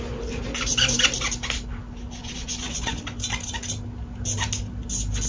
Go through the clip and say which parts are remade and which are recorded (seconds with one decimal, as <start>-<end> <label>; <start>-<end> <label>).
0.0-2.2 recorded; 2.2-3.0 remade; 3.0-5.3 recorded